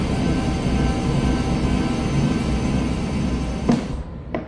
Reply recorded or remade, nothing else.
recorded